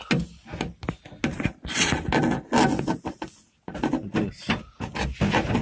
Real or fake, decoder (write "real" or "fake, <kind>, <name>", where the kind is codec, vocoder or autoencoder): real